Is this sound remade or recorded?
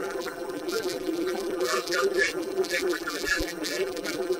remade